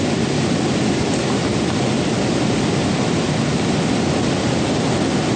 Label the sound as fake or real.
real